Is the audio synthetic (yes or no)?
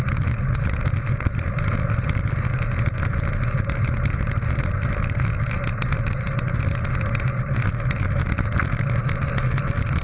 no